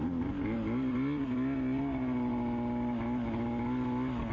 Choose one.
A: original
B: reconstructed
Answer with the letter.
A